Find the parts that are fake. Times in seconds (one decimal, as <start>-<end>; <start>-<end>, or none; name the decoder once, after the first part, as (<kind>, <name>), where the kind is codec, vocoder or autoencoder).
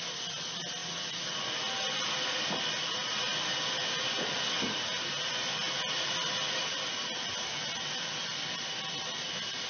none